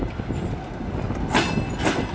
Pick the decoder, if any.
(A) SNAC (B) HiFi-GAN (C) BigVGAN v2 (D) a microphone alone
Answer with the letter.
D